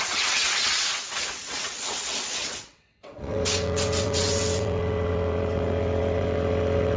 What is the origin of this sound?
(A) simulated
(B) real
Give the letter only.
A